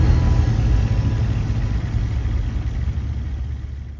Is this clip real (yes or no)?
yes